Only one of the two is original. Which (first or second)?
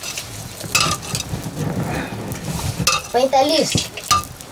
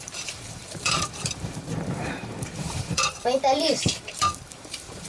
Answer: first